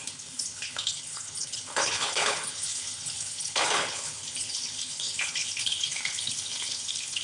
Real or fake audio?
fake